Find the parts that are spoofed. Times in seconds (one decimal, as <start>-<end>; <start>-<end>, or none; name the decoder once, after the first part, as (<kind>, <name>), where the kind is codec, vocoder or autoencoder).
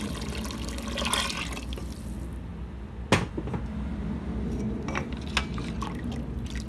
none